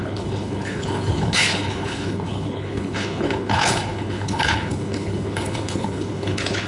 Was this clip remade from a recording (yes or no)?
yes